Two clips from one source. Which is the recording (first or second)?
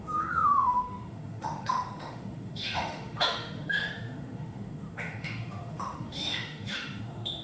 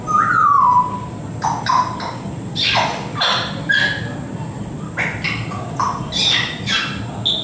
second